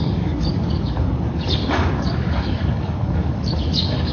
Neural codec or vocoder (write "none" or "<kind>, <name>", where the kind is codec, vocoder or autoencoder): codec, DAC